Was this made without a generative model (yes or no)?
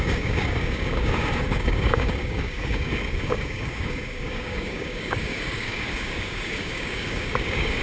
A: no